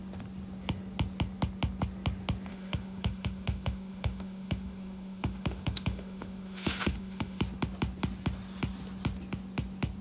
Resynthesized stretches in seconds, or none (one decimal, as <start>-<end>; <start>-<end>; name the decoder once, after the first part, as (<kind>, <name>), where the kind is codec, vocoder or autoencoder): 2.5-7.4 (autoencoder, DAC-VAE)